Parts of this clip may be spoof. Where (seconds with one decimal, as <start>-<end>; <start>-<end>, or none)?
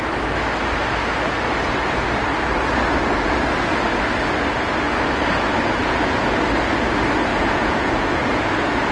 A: 5.8-6.4; 7.3-8.4